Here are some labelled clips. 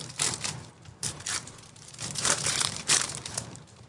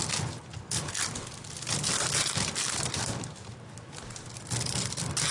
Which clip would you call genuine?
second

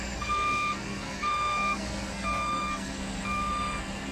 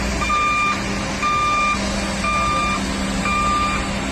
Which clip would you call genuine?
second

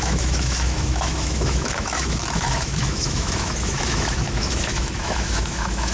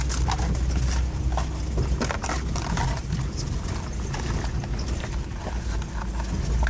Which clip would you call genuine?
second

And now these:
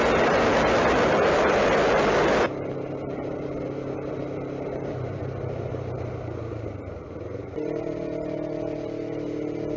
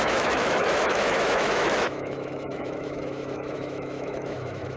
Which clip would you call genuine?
first